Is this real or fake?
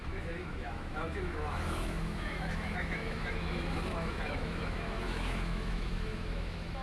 fake